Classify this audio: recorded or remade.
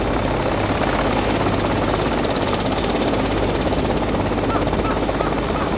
recorded